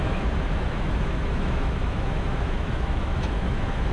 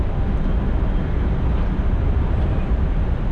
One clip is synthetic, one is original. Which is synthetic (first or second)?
first